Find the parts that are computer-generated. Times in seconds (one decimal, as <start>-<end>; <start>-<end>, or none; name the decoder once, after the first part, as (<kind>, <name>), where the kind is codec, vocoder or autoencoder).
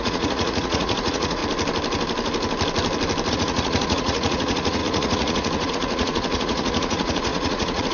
0.0-1.4 (vocoder, Vocos); 3.3-7.9